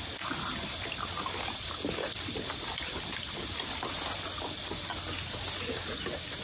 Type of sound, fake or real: real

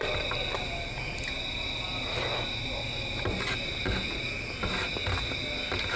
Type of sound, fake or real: real